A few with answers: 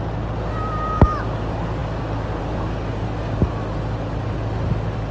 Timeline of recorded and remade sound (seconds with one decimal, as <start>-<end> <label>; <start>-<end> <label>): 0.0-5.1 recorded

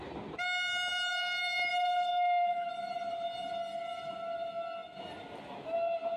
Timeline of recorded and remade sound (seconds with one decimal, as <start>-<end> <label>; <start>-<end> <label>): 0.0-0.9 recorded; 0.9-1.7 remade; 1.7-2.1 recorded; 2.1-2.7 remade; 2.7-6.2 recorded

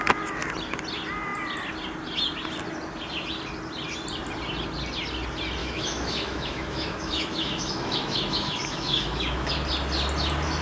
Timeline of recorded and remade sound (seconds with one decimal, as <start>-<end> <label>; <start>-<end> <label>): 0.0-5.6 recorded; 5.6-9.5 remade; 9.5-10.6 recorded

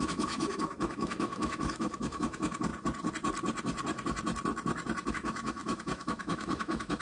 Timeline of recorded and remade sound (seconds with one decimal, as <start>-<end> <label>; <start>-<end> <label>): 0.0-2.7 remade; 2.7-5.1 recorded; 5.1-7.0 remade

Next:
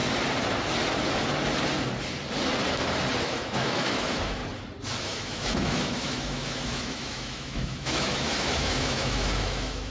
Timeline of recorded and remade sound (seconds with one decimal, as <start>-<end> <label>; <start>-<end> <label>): 0.0-3.2 recorded; 3.2-4.4 remade; 4.4-5.0 recorded; 5.0-9.9 remade

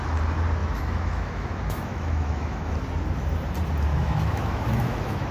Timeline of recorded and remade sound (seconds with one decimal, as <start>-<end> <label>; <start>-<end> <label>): 0.0-0.6 recorded; 0.6-2.7 remade; 2.7-3.9 recorded; 3.9-5.3 remade